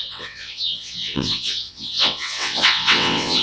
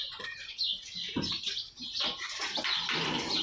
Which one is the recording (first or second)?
second